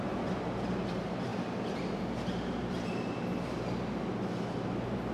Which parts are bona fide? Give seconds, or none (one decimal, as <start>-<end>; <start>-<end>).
0.0-5.1